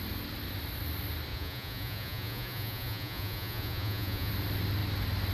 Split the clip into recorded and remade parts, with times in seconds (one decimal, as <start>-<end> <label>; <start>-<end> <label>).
0.0-1.3 recorded; 1.3-4.3 remade; 4.3-5.3 recorded

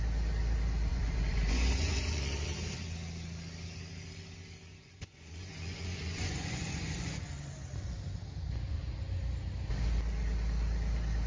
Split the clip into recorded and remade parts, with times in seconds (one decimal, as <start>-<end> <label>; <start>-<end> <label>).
0.0-0.9 recorded; 0.9-2.2 remade; 2.2-4.7 recorded; 4.7-7.5 remade; 7.5-11.3 recorded